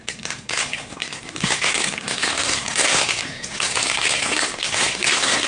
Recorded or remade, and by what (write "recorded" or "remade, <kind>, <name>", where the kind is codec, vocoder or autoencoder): remade, codec, SNAC